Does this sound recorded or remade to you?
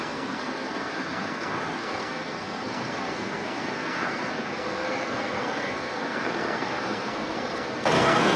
remade